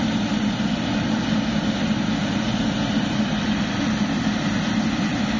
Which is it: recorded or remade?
recorded